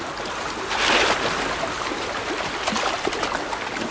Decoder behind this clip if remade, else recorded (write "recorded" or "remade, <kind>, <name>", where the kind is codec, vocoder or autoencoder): recorded